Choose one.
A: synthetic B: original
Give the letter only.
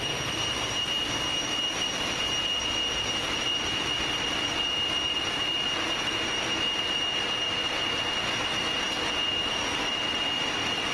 B